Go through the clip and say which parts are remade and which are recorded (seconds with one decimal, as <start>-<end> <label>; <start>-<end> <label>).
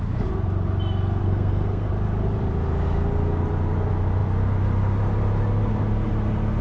0.0-1.2 recorded; 1.2-1.9 remade; 1.9-6.6 recorded